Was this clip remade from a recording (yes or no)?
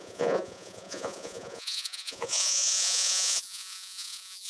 yes